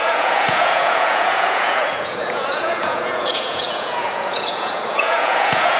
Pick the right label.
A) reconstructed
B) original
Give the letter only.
A